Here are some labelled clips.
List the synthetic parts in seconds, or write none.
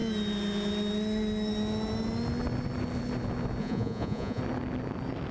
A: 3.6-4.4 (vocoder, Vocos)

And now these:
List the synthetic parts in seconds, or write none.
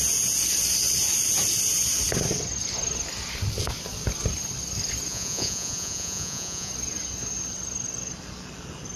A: 5.1-6.7 (vocoder, Vocos)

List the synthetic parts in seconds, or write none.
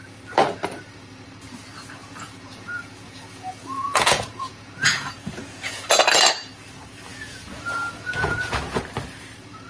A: 2.0-5.8 (vocoder, Vocos); 7.1-8.8